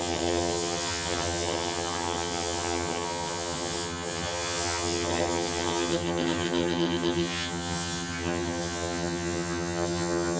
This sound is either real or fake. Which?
fake